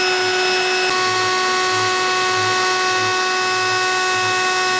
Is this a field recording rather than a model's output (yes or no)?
yes